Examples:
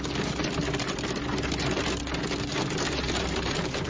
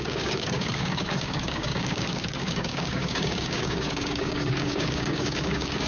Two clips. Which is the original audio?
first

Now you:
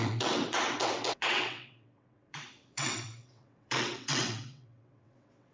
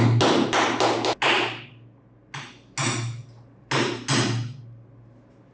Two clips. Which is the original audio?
second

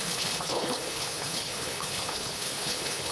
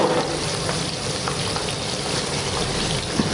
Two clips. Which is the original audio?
second